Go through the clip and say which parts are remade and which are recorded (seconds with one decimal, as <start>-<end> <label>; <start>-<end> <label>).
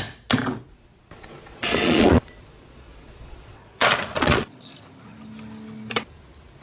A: 0.0-0.7 recorded; 0.7-4.7 remade; 4.7-6.6 recorded